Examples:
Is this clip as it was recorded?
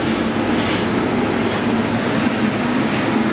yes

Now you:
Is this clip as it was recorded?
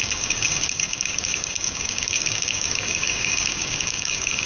no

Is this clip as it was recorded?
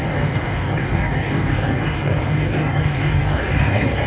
no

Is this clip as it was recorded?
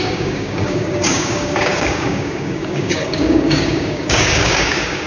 no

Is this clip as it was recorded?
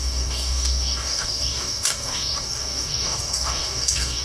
no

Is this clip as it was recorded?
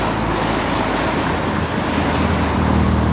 yes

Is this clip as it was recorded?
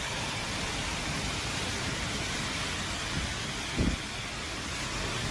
yes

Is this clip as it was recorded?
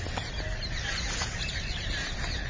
yes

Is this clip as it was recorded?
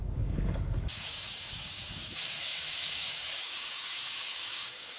no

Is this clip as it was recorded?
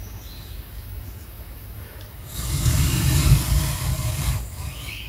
no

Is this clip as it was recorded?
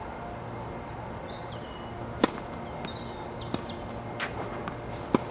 yes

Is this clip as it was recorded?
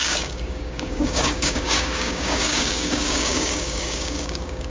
no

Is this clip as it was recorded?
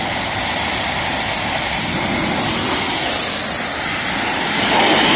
yes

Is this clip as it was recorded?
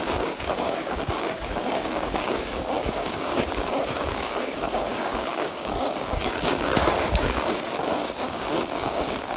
no